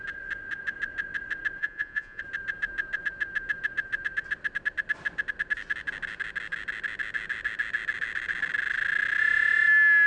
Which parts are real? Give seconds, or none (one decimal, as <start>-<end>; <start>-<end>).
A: 0.0-1.6; 2.2-10.1

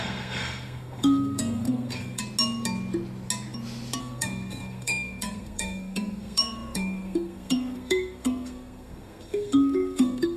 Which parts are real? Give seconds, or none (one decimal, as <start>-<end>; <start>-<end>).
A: 2.2-4.0

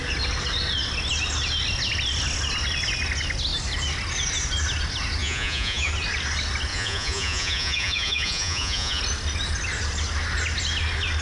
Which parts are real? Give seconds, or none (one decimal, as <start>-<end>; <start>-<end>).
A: 0.0-5.2; 5.9-6.7; 9.0-11.2

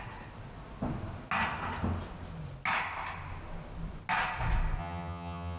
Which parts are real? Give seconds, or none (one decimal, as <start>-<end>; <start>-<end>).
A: 0.0-4.8

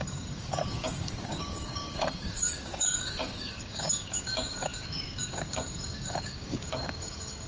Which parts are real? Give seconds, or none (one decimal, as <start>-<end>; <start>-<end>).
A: none

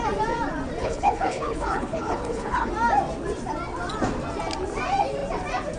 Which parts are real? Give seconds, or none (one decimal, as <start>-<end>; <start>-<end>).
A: 0.0-0.8; 2.7-5.8